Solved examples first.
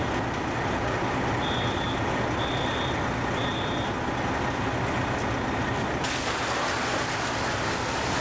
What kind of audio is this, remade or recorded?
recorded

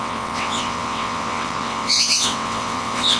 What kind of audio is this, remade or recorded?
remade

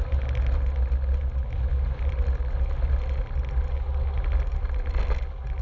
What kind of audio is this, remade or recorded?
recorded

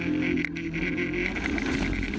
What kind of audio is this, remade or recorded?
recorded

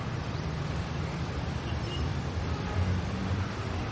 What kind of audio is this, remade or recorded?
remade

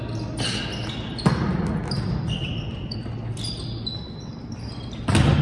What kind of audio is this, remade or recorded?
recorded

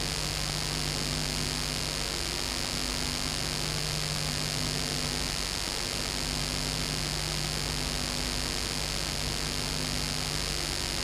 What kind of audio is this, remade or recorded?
recorded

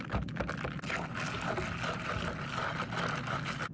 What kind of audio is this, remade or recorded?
recorded